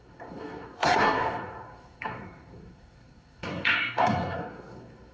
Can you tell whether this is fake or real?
fake